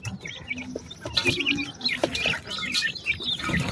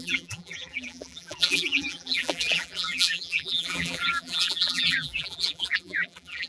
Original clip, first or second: first